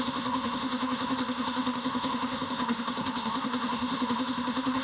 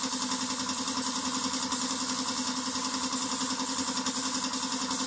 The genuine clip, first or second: second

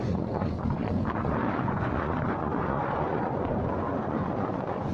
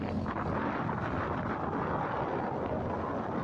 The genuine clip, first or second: second